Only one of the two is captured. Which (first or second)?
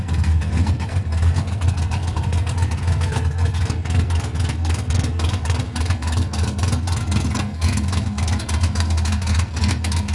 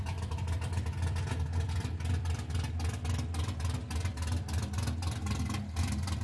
second